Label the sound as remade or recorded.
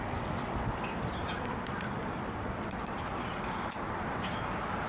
recorded